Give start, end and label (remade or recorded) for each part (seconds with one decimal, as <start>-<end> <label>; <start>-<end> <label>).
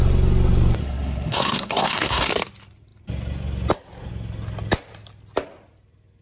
0.0-0.8 recorded; 0.8-2.3 remade; 2.3-6.2 recorded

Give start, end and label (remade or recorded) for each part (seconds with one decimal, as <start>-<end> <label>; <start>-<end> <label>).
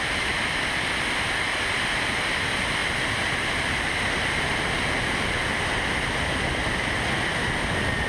0.0-8.1 recorded